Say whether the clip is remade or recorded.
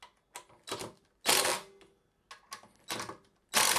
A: recorded